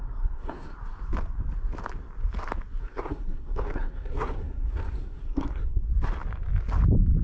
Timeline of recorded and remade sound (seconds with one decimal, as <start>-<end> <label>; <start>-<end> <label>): 0.0-0.7 remade; 0.7-2.8 recorded; 2.8-5.9 remade; 5.9-7.2 recorded